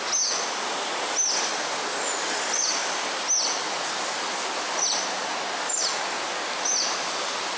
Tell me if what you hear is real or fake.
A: real